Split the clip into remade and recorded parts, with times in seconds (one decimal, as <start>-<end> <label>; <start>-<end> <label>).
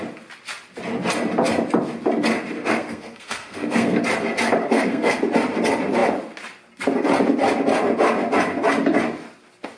0.0-2.6 recorded; 2.6-4.0 remade; 4.0-4.6 recorded; 4.6-5.2 remade; 5.2-9.8 recorded